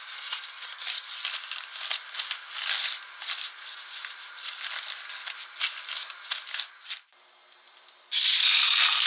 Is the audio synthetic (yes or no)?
no